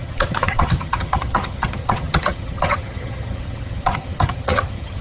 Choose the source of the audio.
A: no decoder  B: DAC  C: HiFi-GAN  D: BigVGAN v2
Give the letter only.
C